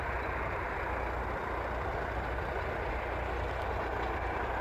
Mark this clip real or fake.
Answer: real